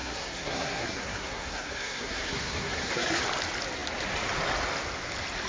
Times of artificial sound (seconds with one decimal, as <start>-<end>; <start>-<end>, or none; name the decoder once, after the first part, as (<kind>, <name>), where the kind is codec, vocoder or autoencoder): 0.0-3.2 (codec, SNAC)